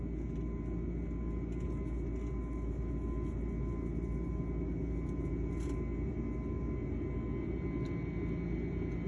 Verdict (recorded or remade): recorded